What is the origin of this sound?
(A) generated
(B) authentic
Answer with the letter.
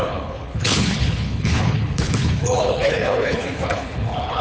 A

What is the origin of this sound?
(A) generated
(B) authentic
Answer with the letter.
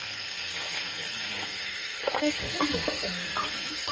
A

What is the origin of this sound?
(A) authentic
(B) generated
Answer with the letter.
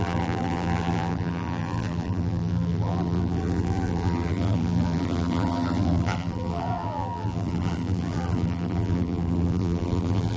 B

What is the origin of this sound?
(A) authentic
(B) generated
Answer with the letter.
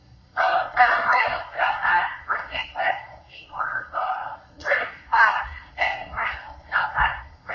B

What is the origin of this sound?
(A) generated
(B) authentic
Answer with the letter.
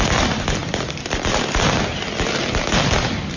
B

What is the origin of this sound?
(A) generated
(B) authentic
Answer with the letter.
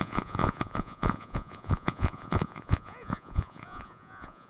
A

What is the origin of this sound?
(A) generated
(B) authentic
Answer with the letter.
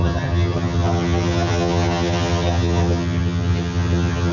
A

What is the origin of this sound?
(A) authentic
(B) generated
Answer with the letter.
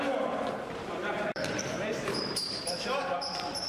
B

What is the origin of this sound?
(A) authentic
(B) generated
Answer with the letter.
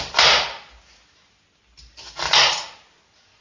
A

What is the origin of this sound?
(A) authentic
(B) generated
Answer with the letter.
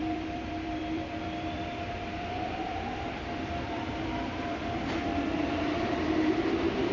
B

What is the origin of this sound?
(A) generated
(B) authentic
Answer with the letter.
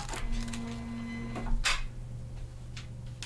B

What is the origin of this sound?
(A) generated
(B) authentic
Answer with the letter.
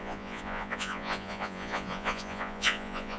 A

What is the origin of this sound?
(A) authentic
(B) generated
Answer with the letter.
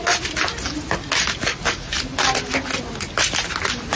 A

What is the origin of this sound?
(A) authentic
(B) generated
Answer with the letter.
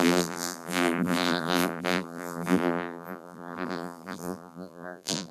B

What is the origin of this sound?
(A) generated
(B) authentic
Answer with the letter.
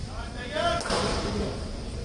B